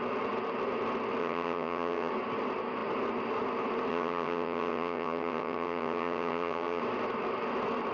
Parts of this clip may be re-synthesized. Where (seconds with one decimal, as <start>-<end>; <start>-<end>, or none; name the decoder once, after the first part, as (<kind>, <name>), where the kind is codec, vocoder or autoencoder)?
1.2-2.1 (vocoder, HiFi-GAN); 3.9-6.8